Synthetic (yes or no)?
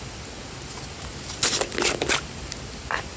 no